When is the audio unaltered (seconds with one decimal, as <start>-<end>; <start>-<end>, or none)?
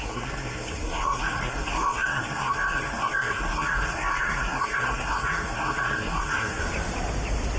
6.6-7.6